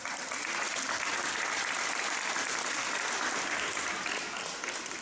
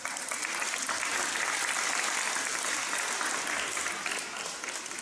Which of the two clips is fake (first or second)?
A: first